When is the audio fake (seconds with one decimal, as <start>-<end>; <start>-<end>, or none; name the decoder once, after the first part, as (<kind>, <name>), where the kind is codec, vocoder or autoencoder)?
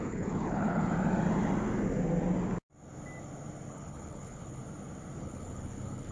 0.0-0.9 (codec, HILCodec); 3.7-4.6; 5.2-6.1